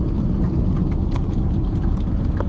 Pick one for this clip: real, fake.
real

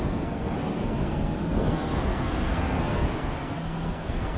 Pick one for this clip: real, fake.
fake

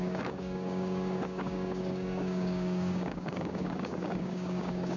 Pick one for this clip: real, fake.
fake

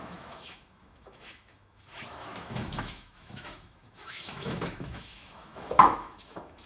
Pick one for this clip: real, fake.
fake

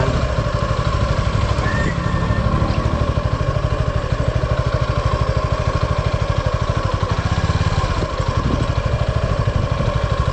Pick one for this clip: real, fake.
real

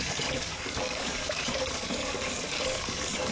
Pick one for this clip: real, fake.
fake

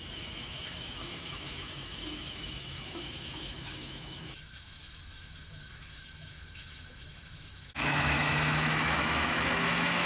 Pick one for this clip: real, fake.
fake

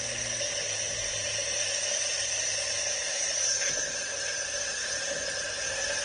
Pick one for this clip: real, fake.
real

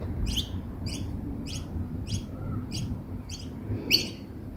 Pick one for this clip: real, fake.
fake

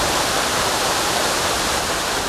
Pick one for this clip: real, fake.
fake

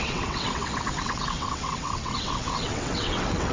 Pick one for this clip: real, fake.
fake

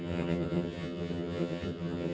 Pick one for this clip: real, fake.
fake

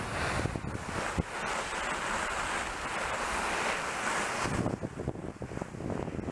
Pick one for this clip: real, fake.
real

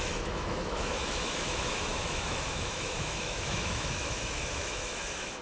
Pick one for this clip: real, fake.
fake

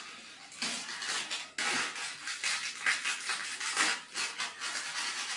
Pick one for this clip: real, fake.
real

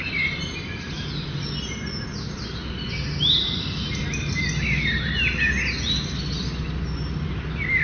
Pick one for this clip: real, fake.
real